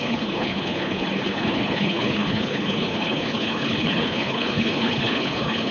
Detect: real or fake fake